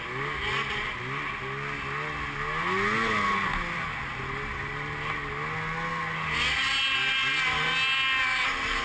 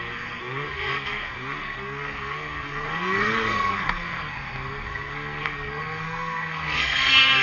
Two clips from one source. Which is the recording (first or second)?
first